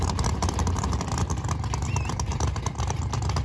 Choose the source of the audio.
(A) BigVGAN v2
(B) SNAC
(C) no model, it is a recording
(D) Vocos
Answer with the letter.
A